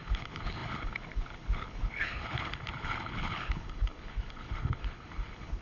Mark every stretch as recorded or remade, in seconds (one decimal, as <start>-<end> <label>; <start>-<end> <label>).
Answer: 0.0-5.6 remade